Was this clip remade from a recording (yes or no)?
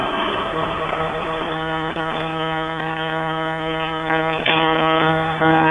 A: yes